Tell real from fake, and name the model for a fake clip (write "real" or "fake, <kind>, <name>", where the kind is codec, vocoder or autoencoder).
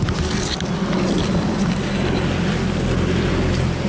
real